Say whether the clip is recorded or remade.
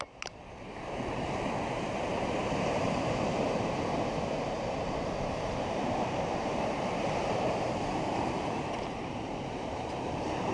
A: remade